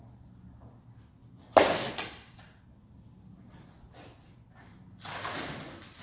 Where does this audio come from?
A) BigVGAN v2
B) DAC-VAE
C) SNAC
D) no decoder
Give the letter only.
D